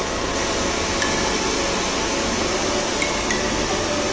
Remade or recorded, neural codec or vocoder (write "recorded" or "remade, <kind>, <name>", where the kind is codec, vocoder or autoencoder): recorded